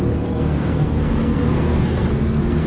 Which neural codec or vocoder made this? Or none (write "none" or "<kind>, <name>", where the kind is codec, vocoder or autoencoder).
codec, SNAC